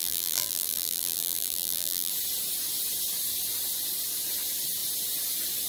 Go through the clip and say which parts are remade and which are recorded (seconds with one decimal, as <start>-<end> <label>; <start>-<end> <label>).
0.0-2.1 remade; 2.1-5.7 recorded